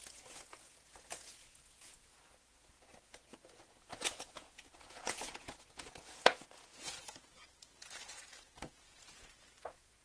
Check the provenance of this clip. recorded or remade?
remade